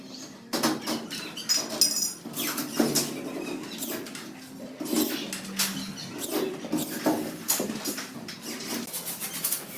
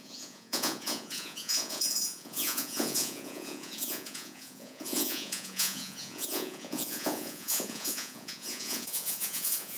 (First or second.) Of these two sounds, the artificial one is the second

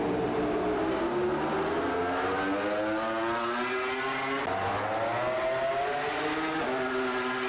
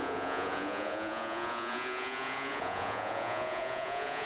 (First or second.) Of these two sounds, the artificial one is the second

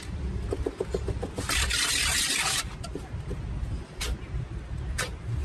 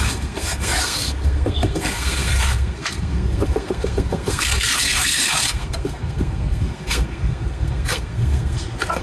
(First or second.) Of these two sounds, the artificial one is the second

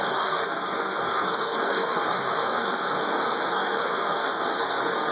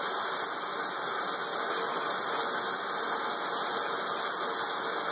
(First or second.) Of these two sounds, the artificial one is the first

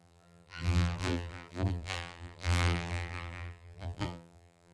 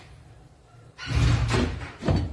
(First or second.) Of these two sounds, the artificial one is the first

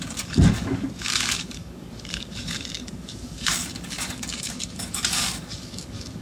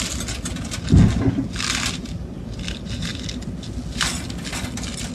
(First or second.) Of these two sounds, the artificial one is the first